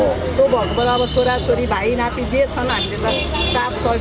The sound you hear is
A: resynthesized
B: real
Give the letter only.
B